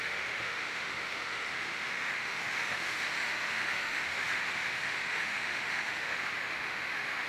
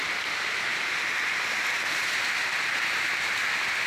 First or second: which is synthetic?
first